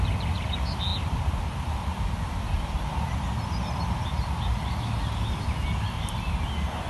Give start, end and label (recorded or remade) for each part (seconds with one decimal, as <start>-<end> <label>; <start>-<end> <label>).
0.0-6.9 recorded